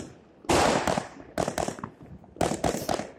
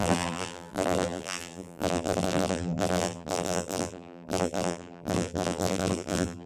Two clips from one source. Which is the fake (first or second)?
second